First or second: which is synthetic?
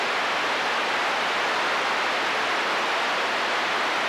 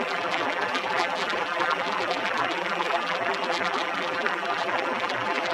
second